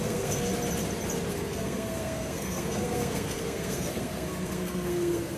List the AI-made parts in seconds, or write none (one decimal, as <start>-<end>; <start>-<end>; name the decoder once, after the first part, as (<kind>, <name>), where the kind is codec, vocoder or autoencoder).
0.0-0.5 (codec, SNAC); 1.3-5.4